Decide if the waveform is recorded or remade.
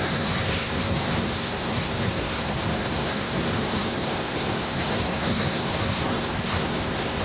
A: remade